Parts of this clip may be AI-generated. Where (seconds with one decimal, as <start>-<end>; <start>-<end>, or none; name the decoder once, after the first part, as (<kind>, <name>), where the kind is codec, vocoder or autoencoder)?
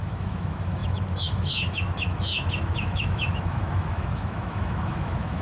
0.0-5.4 (autoencoder, DAC-VAE)